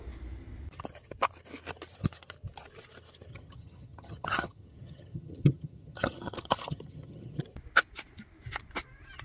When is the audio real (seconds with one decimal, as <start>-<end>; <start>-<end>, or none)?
0.0-3.3; 7.4-9.2